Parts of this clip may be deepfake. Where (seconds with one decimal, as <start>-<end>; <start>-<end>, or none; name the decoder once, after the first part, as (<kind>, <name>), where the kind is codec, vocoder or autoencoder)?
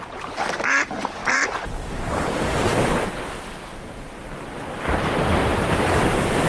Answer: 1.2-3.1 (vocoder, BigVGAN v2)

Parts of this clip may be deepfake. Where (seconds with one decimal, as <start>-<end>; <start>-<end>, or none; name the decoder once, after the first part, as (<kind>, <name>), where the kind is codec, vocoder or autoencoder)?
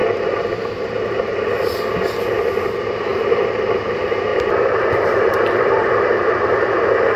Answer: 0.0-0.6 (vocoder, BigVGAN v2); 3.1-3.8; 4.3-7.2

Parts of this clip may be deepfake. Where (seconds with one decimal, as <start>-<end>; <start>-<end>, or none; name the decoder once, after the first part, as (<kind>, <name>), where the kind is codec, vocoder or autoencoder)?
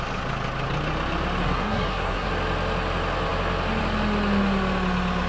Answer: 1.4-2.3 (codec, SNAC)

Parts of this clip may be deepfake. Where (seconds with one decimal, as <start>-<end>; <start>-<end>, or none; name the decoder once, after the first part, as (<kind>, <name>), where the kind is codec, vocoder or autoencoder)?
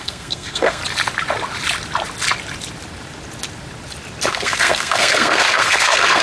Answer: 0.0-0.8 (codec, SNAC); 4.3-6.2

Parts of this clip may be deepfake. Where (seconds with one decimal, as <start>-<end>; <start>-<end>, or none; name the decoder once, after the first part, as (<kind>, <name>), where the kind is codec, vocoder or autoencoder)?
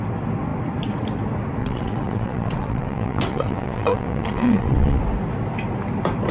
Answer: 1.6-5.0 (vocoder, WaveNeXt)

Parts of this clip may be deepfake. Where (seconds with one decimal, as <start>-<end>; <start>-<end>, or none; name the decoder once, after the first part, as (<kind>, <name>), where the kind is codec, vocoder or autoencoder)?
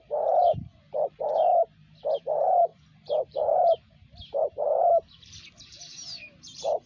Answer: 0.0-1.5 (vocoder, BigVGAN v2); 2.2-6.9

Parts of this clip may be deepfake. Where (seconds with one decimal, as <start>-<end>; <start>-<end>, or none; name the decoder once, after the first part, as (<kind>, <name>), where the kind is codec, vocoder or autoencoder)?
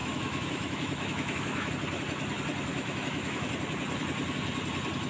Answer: 0.0-1.7 (autoencoder, DAC-VAE); 2.7-3.5